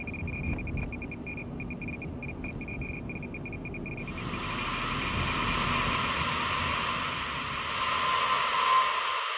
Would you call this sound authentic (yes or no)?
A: yes